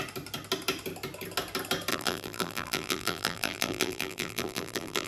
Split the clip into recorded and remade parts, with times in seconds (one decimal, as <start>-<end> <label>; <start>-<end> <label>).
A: 0.0-1.9 recorded; 1.9-5.1 remade